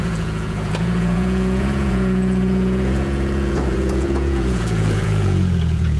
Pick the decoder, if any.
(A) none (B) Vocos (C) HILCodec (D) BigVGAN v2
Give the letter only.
B